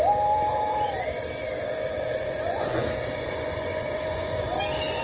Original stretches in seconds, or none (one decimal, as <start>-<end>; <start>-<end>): 0.0-1.5; 4.5-5.0